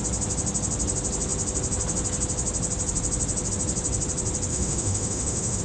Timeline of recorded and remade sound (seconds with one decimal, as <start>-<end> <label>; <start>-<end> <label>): 0.0-4.5 recorded; 4.5-5.6 remade